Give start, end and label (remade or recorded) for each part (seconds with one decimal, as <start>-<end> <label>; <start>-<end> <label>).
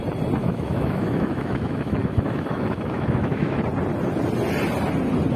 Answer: 0.0-0.4 recorded; 0.4-3.6 remade; 3.6-5.4 recorded